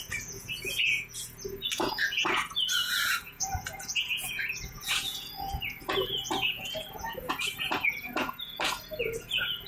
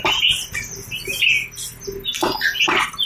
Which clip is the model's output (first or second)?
first